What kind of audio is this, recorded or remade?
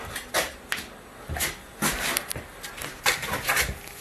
recorded